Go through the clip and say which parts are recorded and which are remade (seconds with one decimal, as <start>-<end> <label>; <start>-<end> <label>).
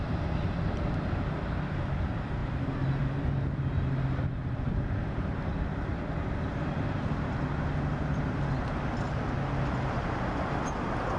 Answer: 0.0-11.2 recorded